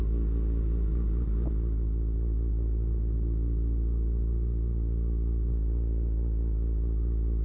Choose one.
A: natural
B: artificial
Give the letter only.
A